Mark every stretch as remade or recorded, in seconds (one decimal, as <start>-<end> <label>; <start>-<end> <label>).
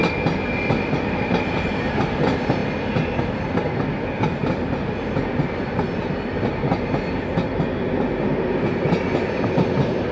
0.0-10.1 recorded